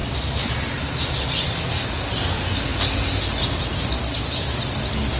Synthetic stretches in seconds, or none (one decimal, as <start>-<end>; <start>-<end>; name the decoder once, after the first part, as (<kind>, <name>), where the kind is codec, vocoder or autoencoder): none